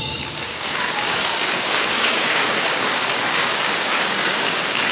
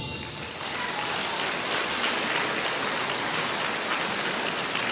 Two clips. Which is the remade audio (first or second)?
first